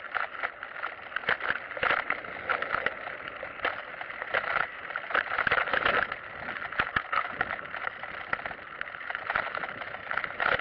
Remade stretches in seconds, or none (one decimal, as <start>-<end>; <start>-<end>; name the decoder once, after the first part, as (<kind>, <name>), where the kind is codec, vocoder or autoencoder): none